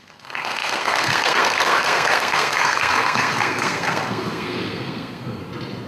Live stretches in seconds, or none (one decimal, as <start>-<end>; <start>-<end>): 5.4-5.9

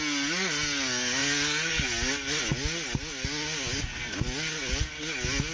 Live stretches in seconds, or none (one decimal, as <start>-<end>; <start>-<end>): 0.0-5.5

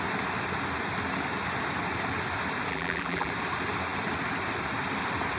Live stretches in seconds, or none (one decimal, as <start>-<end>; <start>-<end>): 0.0-2.7; 3.3-5.4

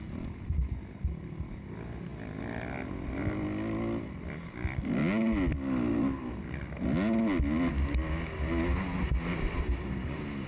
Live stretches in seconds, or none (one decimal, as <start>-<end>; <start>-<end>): 0.0-10.5

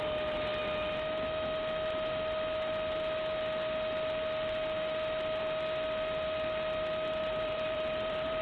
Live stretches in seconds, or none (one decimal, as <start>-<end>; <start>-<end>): 0.0-7.2

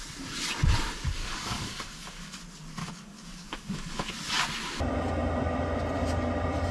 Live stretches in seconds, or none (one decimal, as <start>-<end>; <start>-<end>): 0.0-1.2; 2.4-2.8; 4.1-6.7

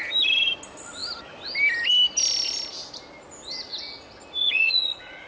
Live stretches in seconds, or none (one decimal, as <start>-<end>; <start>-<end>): 0.0-4.4

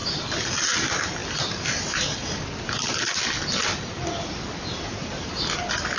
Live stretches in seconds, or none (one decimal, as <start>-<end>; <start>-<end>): 0.5-4.9; 5.4-6.0